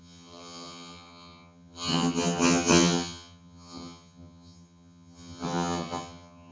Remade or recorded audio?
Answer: remade